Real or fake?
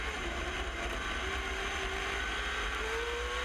real